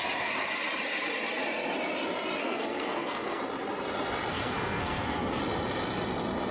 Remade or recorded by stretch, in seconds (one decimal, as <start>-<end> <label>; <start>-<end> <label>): 0.0-2.4 recorded; 2.4-3.4 remade; 3.4-4.3 recorded; 4.3-5.4 remade; 5.4-6.5 recorded